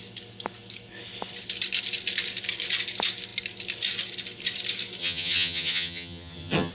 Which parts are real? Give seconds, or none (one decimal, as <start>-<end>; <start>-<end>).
0.0-5.0